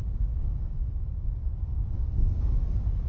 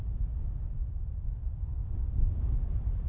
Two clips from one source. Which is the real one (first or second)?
second